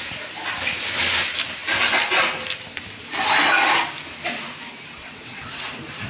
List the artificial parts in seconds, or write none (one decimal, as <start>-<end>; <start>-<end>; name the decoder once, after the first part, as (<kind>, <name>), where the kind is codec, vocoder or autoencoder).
5.0-5.6 (vocoder, WaveNeXt)